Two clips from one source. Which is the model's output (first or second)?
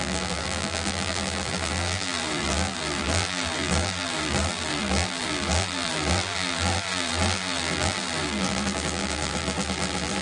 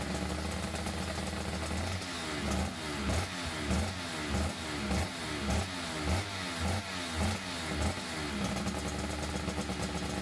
first